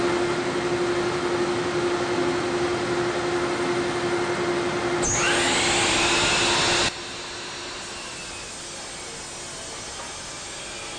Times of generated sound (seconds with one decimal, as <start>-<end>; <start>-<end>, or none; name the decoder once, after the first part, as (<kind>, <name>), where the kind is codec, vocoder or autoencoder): none